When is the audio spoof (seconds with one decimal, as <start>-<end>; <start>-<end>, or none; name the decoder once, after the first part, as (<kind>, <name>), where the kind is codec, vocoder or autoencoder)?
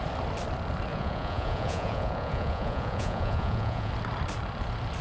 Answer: 0.9-3.9 (vocoder, Vocos)